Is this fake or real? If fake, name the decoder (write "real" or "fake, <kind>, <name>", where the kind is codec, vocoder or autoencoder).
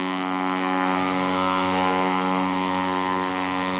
fake, codec, SNAC